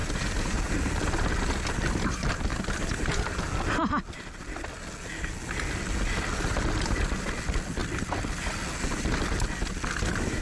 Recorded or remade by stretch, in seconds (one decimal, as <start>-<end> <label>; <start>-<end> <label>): 0.0-0.9 remade; 0.9-10.4 recorded

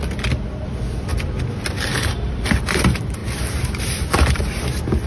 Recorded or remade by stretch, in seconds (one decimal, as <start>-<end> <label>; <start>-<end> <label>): 0.0-5.1 remade

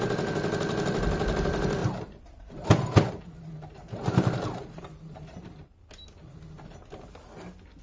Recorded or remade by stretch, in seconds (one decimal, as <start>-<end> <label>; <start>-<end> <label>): 0.0-1.8 recorded; 1.8-5.9 remade; 5.9-7.8 recorded

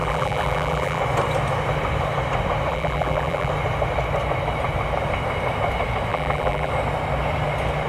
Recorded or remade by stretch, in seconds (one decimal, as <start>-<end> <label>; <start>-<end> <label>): 0.0-1.0 remade; 1.0-2.7 recorded; 2.7-3.5 remade; 3.5-6.1 recorded; 6.1-6.7 remade; 6.7-7.9 recorded

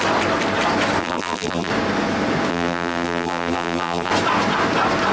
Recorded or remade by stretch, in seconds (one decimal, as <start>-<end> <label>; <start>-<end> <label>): 0.0-1.0 recorded; 1.0-1.7 remade; 1.7-2.5 recorded; 2.5-4.1 remade; 4.1-5.1 recorded

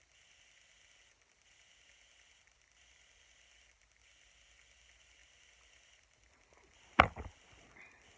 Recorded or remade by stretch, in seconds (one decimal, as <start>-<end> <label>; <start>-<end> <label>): 0.0-8.2 recorded

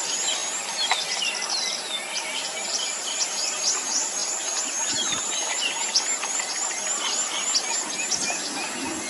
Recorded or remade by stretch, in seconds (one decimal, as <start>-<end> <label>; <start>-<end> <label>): 0.0-2.3 recorded; 2.3-3.1 remade; 3.1-9.1 recorded